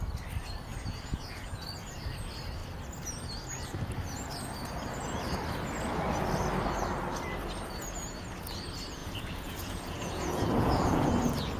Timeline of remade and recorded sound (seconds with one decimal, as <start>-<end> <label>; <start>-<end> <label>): 0.0-0.7 recorded; 0.7-1.6 remade; 1.6-9.0 recorded; 9.0-11.2 remade; 11.2-11.6 recorded